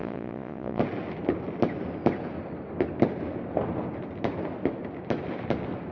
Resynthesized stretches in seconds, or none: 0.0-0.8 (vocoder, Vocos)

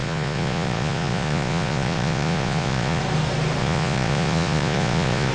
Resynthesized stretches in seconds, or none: 0.0-3.0 (vocoder, Vocos); 3.6-5.3

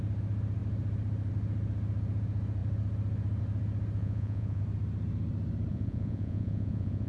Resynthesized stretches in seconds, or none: 4.0-4.6 (vocoder, Vocos); 5.7-7.1

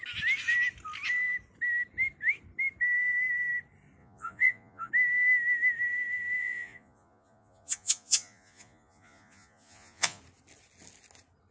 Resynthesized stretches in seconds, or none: 4.0-4.9 (vocoder, Vocos); 6.4-10.2

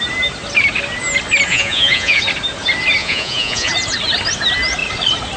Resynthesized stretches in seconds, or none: 1.5-2.2 (vocoder, Vocos); 3.0-3.7

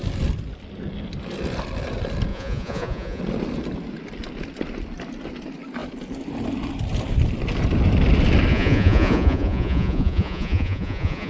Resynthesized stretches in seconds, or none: 2.3-3.2 (vocoder, Vocos); 8.5-11.3

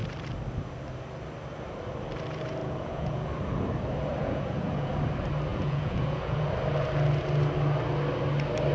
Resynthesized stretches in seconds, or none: 2.6-3.3 (vocoder, Vocos); 4.2-4.9; 5.5-6.5

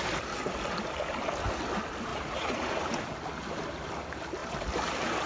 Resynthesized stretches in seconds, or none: 2.1-3.1 (vocoder, Vocos)